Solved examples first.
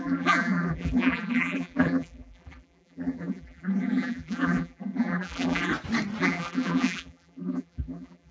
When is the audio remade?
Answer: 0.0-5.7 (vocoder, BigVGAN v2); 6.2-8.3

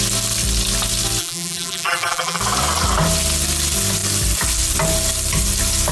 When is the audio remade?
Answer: 1.2-2.4 (vocoder, BigVGAN v2)

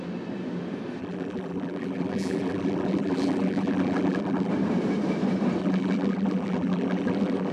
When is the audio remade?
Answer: 1.0-4.5 (vocoder, BigVGAN v2); 5.6-7.5

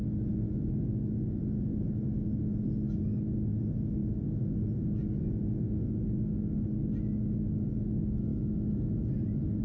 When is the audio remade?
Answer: none

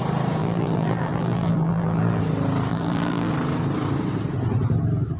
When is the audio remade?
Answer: 0.4-2.2 (vocoder, BigVGAN v2); 2.7-3.3

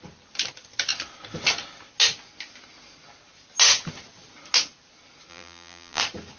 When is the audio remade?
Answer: 5.3-6.0 (vocoder, BigVGAN v2)